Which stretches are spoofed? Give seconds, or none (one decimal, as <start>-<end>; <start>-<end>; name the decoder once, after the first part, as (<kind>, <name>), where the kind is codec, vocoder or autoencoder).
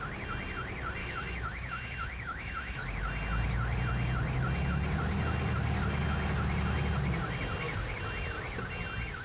1.0-2.8 (autoencoder, DAC-VAE)